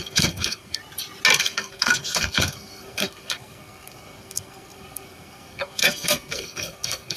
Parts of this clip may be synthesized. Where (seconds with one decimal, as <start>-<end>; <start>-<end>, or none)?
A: 0.0-0.8; 1.4-7.2